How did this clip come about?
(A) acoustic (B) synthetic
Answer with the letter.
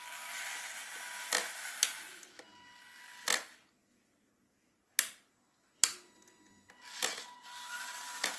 A